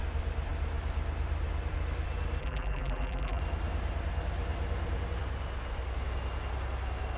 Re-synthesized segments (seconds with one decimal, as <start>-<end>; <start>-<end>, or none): 2.4-3.4